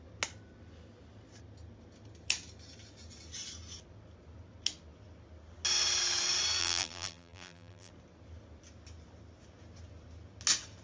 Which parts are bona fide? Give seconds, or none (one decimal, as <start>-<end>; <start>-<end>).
0.0-6.6; 7.9-10.8